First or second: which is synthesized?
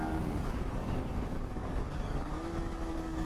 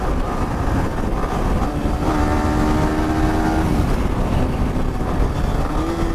first